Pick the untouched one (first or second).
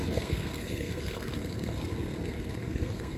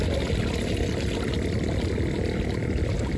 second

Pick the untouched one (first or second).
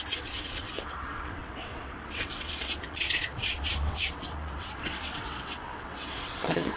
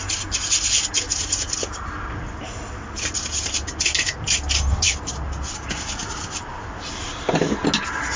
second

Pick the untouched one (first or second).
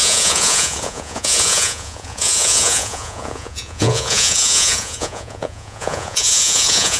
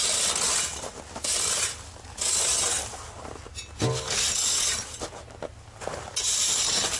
second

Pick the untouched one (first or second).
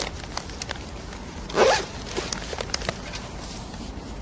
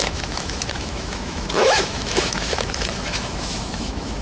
first